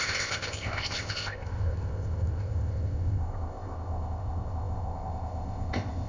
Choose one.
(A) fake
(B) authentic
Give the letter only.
A